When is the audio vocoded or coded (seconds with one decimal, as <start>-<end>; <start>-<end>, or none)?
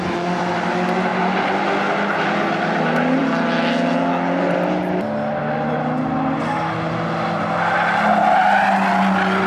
1.1-1.6